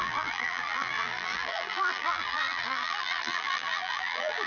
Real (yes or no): no